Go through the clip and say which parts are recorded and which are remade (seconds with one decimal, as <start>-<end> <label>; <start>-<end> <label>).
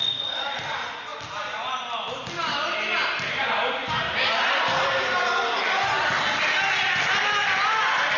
0.0-8.2 recorded